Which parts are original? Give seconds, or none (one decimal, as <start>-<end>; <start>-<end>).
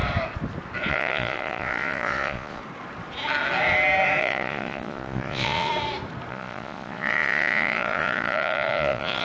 0.0-0.9; 2.6-4.2; 5.7-6.3